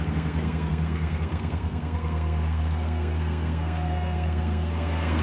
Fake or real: fake